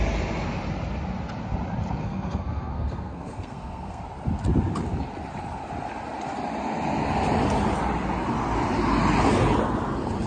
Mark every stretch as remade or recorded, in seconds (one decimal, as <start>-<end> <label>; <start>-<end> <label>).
0.0-2.0 recorded; 2.0-4.0 remade; 4.0-10.3 recorded